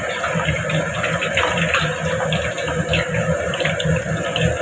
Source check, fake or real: real